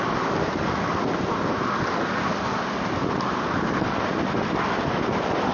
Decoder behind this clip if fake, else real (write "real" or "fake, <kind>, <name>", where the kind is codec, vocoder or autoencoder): real